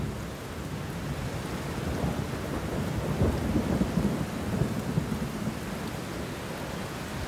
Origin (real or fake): real